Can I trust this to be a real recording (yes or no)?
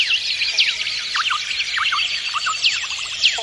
yes